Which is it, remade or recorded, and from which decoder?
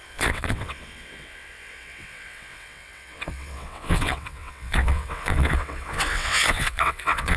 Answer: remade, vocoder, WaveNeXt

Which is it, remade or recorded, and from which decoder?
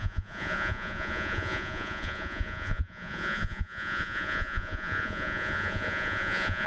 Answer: remade, vocoder, Vocos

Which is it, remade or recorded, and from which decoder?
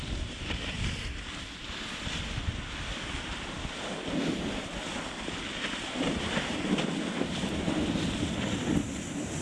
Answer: recorded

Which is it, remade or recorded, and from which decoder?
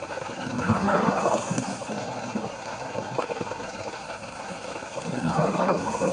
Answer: remade, codec, SNAC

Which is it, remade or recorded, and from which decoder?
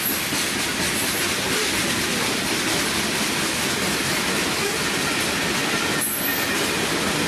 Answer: recorded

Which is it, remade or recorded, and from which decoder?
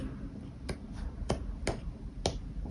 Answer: recorded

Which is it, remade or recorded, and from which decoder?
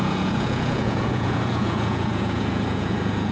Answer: remade, vocoder, Vocos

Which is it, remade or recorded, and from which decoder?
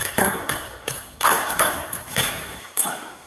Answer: remade, codec, SNAC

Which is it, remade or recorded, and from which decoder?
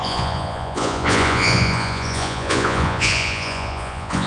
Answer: remade, vocoder, Vocos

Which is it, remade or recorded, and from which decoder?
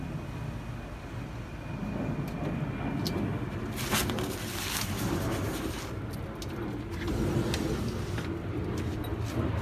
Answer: recorded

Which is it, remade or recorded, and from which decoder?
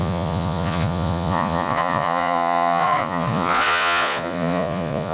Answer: remade, vocoder, Vocos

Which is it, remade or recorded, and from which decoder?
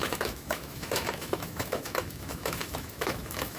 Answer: remade, autoencoder, DAC-VAE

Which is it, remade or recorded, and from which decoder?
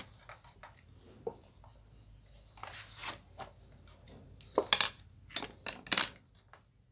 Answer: recorded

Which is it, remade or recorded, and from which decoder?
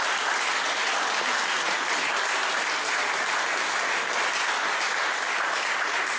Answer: recorded